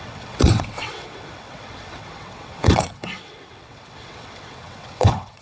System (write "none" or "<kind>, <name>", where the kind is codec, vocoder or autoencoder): vocoder, WaveNeXt